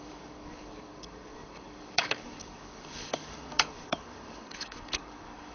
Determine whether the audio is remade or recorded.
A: remade